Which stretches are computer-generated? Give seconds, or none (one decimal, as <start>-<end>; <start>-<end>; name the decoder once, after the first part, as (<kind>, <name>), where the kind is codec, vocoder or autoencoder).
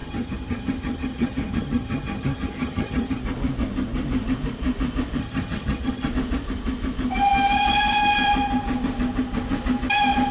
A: 0.0-3.2 (vocoder, HiFi-GAN); 5.2-6.1